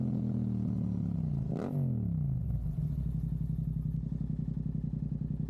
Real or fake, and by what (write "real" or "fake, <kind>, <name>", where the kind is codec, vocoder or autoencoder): real